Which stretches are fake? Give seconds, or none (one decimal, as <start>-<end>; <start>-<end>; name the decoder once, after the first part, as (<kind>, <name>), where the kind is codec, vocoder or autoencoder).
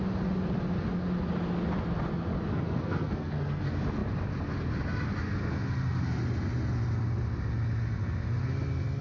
2.5-3.6 (codec, SNAC)